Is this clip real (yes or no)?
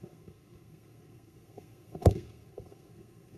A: no